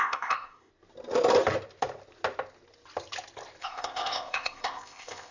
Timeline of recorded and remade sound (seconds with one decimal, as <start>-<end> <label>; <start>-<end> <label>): 0.0-0.7 remade; 0.7-3.6 recorded; 3.6-5.3 remade